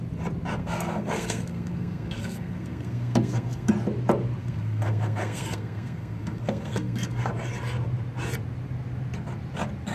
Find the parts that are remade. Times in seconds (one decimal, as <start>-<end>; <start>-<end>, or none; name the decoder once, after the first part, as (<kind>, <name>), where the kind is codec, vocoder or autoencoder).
0.6-3.7 (codec, SNAC); 4.4-7.3